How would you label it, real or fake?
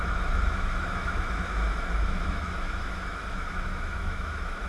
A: fake